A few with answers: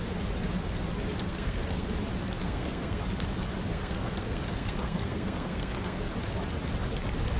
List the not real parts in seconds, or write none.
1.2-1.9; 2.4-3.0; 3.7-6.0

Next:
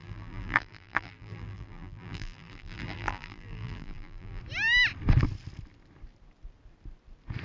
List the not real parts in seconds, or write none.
0.0-4.4

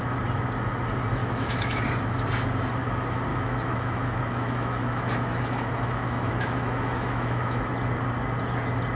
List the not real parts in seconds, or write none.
1.2-1.8; 3.3-7.6

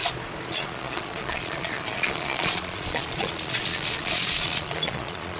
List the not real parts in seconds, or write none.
0.5-5.4

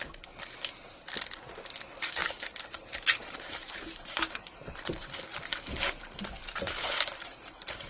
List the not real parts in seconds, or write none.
2.2-5.0; 6.4-7.9

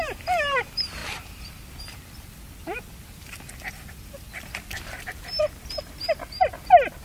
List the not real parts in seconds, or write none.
1.0-5.0

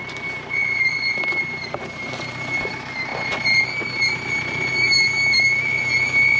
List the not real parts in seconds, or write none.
4.7-5.9

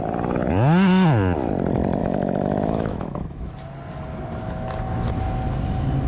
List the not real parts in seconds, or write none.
2.0-3.5